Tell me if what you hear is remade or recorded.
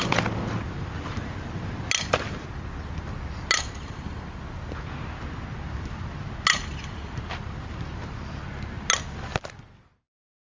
recorded